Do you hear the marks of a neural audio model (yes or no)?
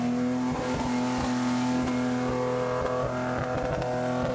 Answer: no